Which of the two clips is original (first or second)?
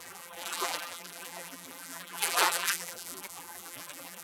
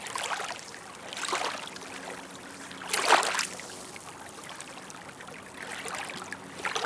second